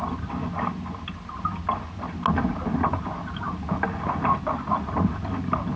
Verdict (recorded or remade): recorded